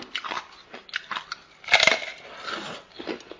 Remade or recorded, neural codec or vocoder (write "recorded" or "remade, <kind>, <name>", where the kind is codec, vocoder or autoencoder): recorded